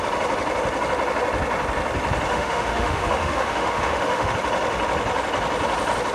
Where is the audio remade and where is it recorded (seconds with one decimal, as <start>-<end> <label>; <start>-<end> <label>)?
0.0-2.3 recorded; 2.3-4.3 remade; 4.3-6.1 recorded